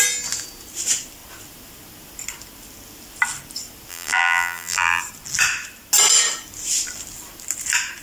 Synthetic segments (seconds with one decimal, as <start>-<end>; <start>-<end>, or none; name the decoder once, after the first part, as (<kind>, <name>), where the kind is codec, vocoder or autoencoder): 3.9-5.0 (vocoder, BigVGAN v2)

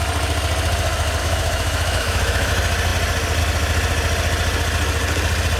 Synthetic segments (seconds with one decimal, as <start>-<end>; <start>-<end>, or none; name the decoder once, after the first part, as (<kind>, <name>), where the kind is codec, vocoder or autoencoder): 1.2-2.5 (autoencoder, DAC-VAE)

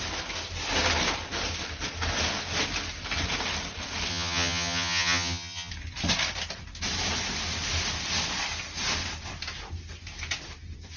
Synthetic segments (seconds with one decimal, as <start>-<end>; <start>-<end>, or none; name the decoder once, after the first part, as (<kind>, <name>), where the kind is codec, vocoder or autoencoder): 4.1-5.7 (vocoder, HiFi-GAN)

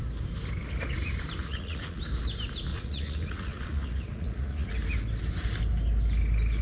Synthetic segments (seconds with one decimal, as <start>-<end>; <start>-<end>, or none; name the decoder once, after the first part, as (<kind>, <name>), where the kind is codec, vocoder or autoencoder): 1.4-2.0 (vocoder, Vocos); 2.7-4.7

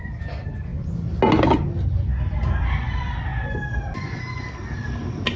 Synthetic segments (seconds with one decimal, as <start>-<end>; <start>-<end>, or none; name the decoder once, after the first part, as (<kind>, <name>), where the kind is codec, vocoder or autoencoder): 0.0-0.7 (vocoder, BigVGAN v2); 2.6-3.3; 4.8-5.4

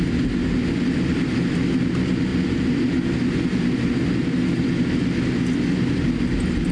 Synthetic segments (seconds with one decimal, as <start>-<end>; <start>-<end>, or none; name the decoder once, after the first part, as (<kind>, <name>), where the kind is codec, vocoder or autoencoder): none